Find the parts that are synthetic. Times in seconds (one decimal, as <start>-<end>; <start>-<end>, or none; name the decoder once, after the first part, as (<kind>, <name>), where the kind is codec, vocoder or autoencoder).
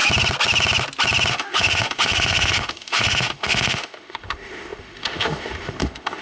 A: 1.3-6.2 (autoencoder, DAC-VAE)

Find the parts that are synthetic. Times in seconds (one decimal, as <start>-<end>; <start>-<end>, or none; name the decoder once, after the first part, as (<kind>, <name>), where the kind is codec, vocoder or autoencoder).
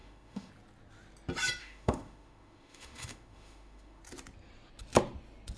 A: 0.0-0.5 (autoencoder, DAC-VAE); 1.6-4.0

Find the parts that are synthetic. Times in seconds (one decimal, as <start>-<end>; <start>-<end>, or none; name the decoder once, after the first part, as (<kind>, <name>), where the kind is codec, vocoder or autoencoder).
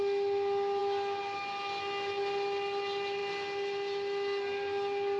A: none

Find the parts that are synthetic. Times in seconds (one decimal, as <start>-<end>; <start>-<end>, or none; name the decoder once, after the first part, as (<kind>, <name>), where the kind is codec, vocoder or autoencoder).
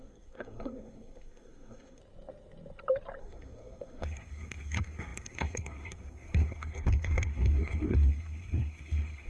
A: 0.0-2.0 (codec, SNAC); 3.2-9.3